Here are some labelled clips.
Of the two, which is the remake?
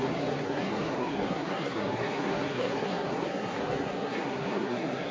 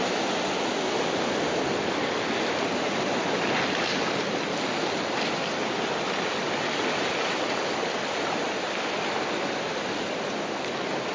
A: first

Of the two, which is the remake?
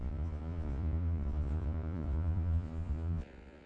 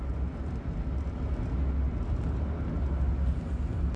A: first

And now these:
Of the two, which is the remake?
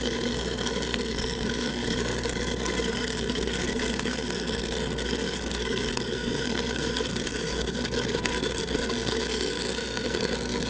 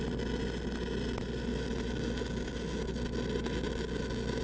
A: first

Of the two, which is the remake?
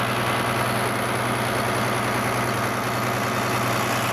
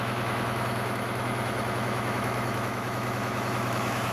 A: second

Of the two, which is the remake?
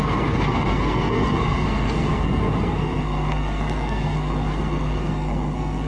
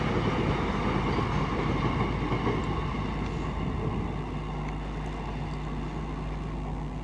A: first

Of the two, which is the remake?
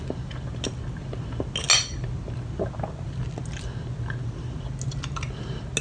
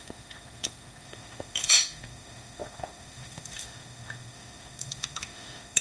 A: second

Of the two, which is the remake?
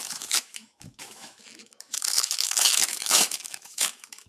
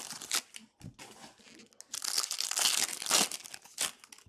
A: first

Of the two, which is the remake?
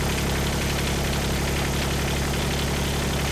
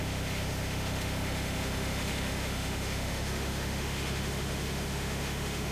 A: second